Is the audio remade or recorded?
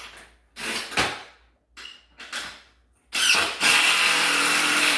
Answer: recorded